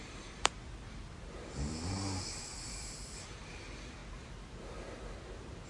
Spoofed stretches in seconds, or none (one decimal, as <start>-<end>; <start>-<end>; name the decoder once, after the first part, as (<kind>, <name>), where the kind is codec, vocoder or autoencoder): 0.0-3.4 (vocoder, BigVGAN v2)